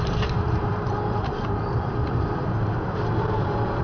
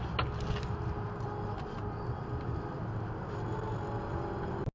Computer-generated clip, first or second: first